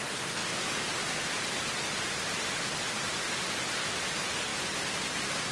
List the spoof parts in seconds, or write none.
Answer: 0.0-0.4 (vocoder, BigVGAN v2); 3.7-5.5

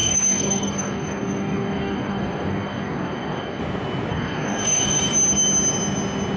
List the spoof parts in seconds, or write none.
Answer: 0.0-3.6 (codec, DAC); 4.1-5.0

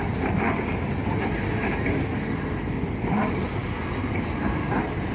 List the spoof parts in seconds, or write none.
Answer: none

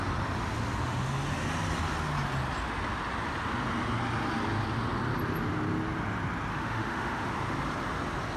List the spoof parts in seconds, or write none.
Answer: 6.5-7.3 (autoencoder, DAC-VAE)

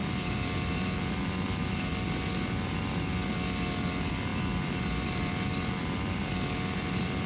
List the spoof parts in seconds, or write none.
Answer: 0.0-1.4 (vocoder, BigVGAN v2); 4.3-6.3

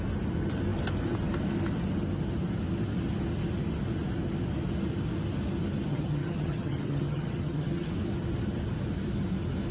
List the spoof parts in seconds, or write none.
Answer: 5.9-7.9 (vocoder, HiFi-GAN)